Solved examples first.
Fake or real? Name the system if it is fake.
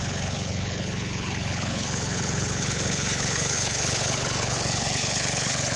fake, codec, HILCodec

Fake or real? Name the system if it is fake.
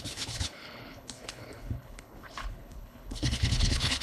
fake, codec, HILCodec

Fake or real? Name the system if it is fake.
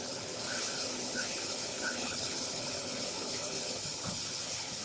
fake, codec, HILCodec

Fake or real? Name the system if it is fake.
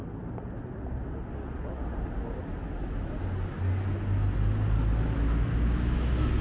real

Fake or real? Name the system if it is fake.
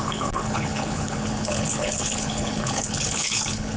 fake, codec, HILCodec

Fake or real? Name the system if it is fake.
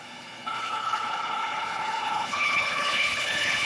fake, codec, HILCodec